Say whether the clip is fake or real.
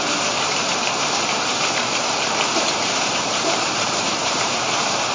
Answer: fake